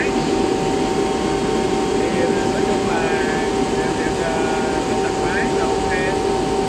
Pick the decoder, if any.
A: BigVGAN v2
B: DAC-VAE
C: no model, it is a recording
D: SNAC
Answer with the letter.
C